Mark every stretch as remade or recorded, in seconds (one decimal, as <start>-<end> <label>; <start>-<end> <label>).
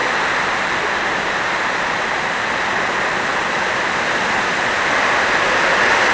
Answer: 0.0-6.1 recorded